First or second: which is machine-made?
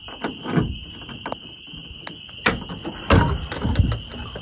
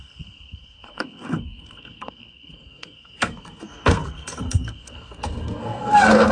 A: second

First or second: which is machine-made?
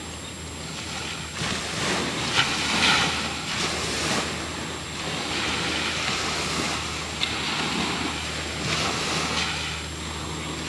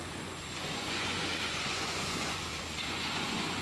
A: second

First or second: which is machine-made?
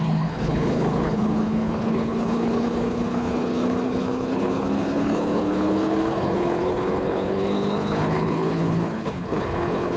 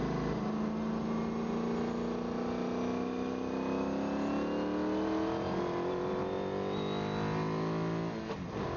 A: first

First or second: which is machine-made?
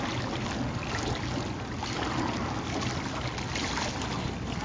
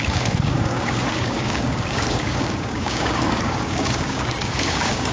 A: second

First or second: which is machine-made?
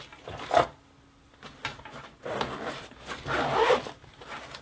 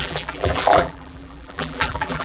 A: second